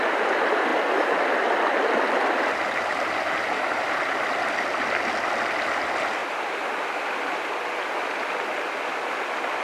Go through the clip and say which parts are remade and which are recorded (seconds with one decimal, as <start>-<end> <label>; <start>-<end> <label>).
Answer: 0.0-9.6 recorded